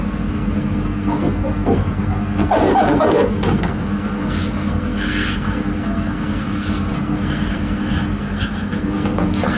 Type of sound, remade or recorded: remade